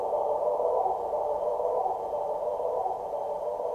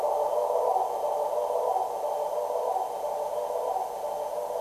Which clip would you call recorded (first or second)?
second